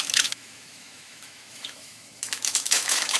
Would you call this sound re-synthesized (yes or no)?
yes